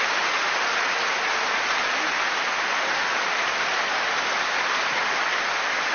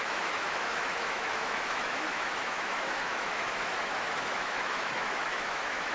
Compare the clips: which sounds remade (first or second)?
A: second